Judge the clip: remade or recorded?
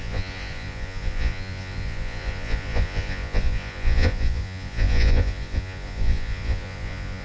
remade